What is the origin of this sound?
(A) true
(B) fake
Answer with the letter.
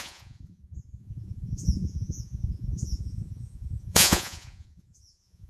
B